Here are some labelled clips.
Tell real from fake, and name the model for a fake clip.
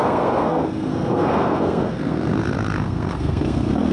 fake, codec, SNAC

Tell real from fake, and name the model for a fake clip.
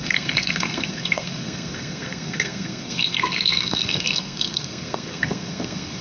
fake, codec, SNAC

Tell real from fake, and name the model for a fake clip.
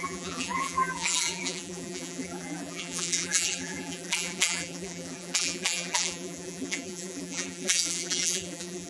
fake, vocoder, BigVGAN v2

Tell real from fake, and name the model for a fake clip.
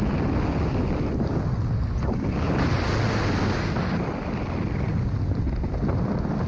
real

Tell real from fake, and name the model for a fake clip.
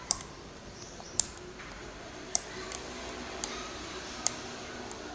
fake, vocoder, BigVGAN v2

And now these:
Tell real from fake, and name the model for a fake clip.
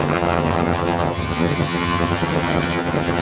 fake, vocoder, HiFi-GAN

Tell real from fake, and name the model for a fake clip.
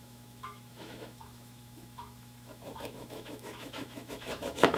fake, autoencoder, DAC-VAE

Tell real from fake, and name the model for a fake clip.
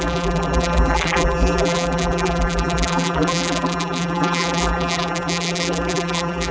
fake, vocoder, BigVGAN v2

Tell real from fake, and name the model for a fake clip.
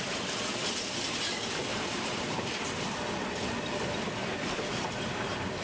fake, vocoder, BigVGAN v2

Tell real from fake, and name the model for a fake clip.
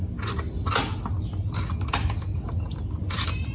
real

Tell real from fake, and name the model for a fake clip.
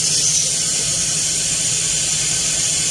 fake, vocoder, BigVGAN v2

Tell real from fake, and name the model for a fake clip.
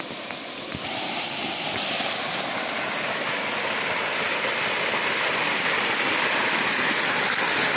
real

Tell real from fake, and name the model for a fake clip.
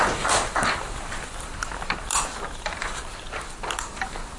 real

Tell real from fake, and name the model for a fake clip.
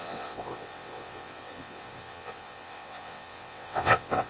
fake, vocoder, WaveNeXt